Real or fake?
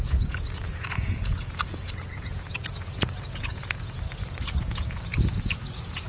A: fake